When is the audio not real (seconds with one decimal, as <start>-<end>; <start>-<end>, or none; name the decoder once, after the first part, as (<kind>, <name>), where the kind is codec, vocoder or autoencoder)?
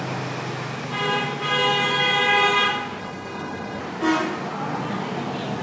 3.0-3.8 (codec, HILCodec)